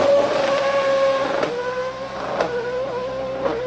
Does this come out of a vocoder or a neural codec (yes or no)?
no